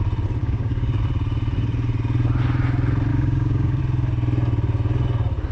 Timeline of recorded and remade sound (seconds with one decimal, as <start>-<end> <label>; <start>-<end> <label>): 0.0-0.4 recorded; 0.4-1.0 remade; 1.0-3.1 recorded; 3.1-3.8 remade; 3.8-5.5 recorded